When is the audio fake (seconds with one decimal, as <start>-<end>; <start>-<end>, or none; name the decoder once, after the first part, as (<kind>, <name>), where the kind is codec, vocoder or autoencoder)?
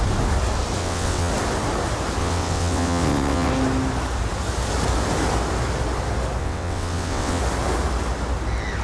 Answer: 0.8-1.3 (vocoder, WaveNeXt); 2.2-3.5; 6.4-7.4